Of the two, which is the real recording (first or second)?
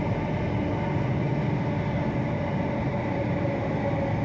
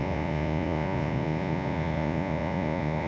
first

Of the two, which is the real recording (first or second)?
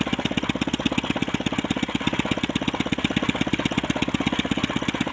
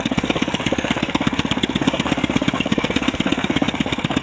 first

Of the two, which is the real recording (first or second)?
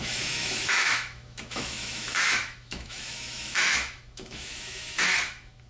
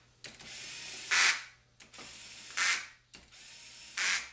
second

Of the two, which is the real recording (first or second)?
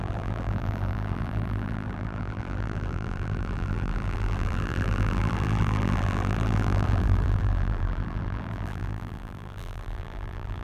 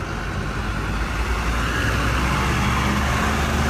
second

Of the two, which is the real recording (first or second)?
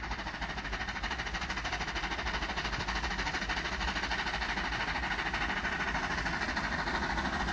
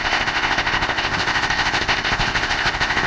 first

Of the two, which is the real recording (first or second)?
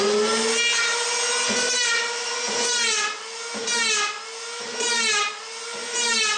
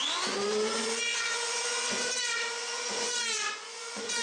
first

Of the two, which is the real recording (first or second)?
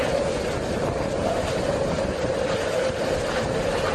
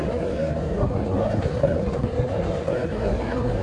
first